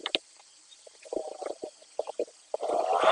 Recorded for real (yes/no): yes